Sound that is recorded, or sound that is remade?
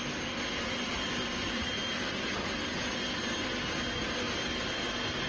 recorded